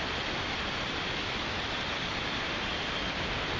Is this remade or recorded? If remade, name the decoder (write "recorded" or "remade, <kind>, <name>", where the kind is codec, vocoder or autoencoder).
recorded